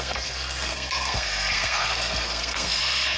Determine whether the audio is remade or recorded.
remade